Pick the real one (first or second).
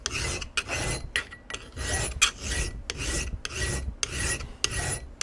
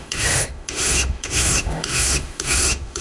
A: first